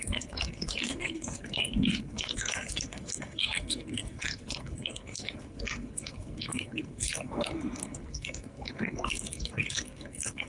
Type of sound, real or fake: fake